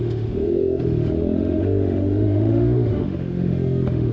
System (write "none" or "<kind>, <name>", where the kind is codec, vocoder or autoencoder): autoencoder, DAC-VAE